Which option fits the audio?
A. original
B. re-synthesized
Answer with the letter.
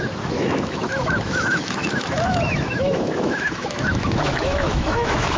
B